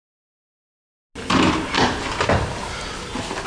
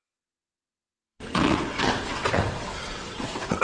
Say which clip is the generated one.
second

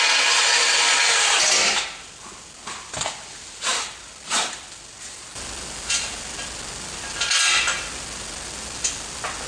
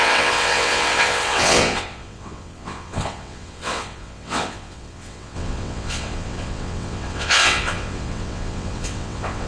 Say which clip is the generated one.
second